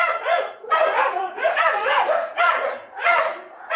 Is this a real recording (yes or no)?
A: no